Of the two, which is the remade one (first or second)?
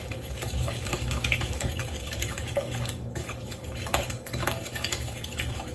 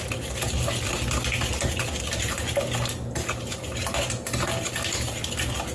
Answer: first